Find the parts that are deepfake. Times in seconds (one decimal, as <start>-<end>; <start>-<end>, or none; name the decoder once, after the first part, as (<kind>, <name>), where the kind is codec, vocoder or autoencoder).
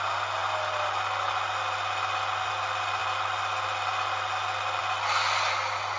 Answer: none